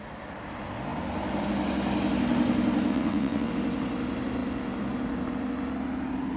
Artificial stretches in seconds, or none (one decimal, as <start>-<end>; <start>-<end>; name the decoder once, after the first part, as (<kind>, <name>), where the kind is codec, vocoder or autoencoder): 2.9-3.5 (vocoder, WaveNeXt)